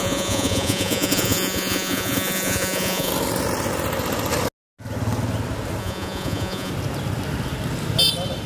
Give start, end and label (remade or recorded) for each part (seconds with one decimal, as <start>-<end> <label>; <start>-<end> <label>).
0.0-3.1 remade; 3.1-5.8 recorded; 5.8-6.7 remade; 6.7-8.5 recorded